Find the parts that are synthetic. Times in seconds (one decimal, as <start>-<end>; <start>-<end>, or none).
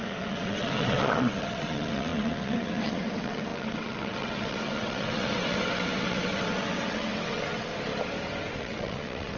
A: 0.0-7.7; 8.5-9.4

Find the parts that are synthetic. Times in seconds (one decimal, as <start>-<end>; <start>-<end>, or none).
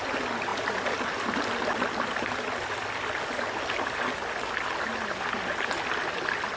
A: none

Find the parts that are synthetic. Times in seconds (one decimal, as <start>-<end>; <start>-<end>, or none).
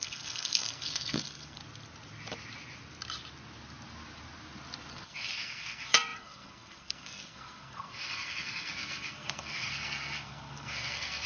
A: 0.0-1.6; 4.9-11.3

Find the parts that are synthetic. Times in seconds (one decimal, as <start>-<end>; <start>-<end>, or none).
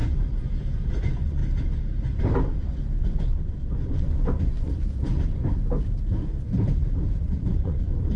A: 0.9-1.4; 3.0-4.7; 7.2-8.2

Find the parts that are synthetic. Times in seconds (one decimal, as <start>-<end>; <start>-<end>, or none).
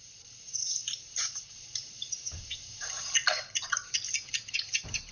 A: 0.0-5.1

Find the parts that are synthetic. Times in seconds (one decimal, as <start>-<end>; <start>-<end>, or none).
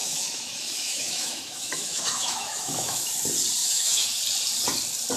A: 0.0-3.1; 3.6-4.2